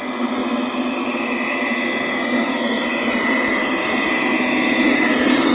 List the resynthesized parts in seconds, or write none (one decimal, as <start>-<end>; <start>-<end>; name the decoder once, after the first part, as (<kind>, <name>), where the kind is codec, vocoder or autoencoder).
none